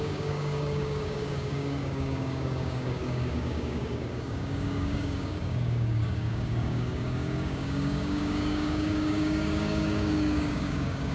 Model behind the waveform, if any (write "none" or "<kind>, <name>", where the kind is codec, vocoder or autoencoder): codec, DAC